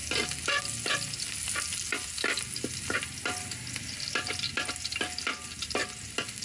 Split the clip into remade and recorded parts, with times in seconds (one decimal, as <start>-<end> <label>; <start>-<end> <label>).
0.0-6.4 recorded